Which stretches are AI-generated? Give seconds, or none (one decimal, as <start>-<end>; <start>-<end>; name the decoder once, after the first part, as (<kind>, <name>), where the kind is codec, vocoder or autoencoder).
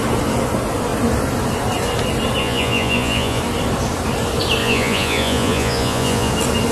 2.4-3.4 (vocoder, Vocos); 4.6-6.3